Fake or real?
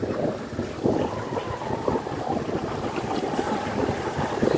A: real